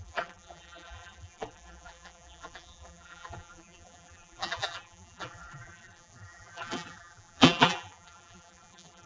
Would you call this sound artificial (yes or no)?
yes